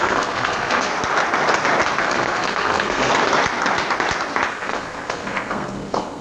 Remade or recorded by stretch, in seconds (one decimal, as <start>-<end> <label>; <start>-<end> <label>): 0.0-0.9 remade; 0.9-2.0 recorded; 2.0-3.1 remade; 3.1-4.5 recorded; 4.5-6.2 remade